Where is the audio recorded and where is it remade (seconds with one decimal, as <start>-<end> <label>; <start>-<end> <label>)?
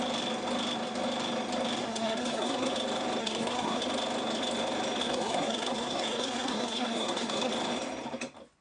0.0-1.8 recorded; 1.8-2.7 remade; 2.7-3.2 recorded; 3.2-3.8 remade; 3.8-5.0 recorded; 5.0-7.5 remade; 7.5-8.6 recorded